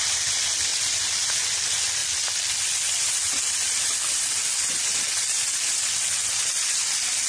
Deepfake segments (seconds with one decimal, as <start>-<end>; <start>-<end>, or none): none